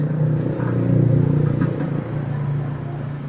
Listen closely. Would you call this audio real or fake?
real